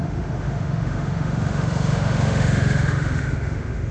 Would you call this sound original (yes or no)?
no